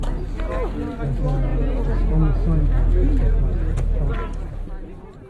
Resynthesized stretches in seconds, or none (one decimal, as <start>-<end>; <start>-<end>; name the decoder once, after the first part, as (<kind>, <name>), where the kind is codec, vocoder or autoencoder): none